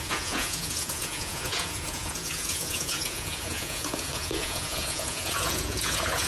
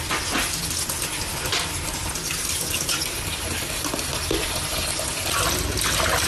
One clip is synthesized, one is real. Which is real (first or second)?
second